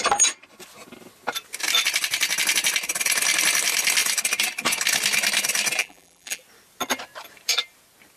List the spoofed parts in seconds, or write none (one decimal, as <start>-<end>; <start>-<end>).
5.8-6.4

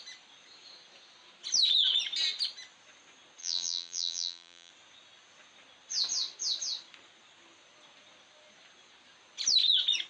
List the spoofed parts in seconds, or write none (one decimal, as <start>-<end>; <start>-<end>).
3.4-4.7

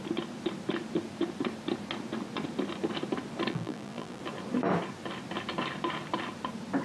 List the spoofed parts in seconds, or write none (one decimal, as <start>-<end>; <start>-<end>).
3.5-4.2

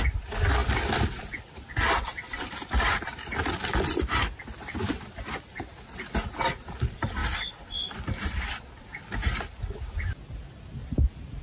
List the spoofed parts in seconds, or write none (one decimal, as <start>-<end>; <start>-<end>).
0.6-4.4; 10.8-11.4

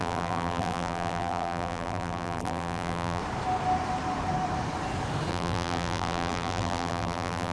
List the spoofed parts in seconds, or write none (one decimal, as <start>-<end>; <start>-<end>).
0.0-3.2; 5.3-7.5

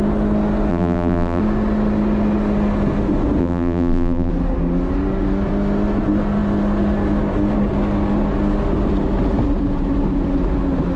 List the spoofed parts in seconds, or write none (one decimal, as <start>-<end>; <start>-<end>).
0.7-1.4; 3.4-4.3

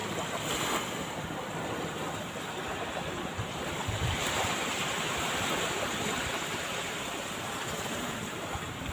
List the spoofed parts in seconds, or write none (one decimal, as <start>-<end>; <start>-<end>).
2.3-8.9

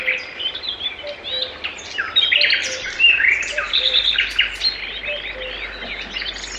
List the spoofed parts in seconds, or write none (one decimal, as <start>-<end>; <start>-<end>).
2.6-4.2